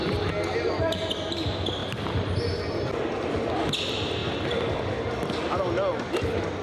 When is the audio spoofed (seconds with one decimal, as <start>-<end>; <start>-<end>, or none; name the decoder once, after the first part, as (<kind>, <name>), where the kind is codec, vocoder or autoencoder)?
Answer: 1.8-2.4 (vocoder, BigVGAN v2)